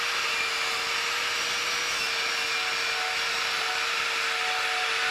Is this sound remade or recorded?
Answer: recorded